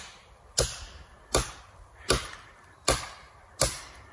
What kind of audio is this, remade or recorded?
recorded